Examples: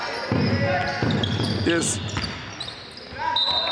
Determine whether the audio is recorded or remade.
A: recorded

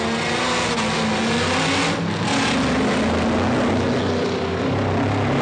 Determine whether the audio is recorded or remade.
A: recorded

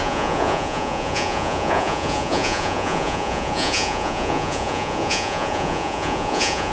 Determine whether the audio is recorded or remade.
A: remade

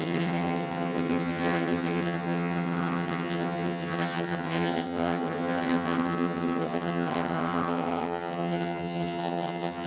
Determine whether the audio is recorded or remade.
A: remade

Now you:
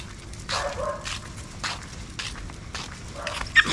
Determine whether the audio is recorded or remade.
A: recorded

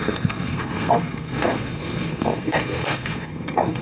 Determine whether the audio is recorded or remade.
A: remade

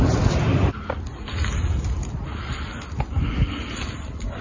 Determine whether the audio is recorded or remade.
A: recorded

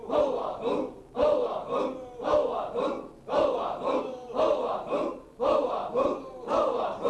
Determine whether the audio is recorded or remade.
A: recorded